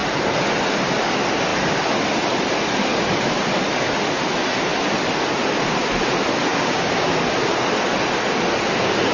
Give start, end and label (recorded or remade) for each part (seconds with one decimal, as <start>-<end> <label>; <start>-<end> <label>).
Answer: 0.0-6.5 recorded; 6.5-7.1 remade; 7.1-9.1 recorded